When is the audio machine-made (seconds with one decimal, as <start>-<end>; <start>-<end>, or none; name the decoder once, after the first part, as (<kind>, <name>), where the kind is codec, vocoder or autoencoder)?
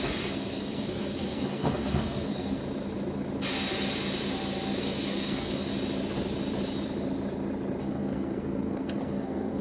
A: 0.0-2.6 (codec, SNAC); 4.8-5.7; 7.8-9.6